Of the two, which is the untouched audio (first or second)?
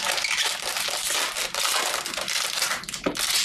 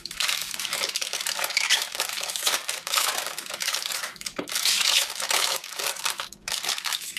first